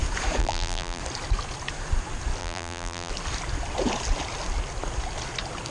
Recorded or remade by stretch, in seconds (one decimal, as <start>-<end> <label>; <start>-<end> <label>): 0.0-0.4 recorded; 0.4-1.0 remade; 1.0-2.4 recorded; 2.4-3.1 remade; 3.1-5.7 recorded